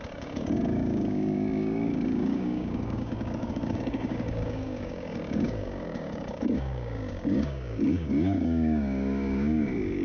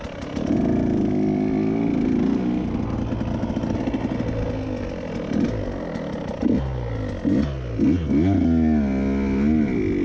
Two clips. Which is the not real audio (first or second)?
first